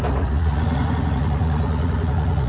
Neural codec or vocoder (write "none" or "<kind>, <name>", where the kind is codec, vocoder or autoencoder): vocoder, Vocos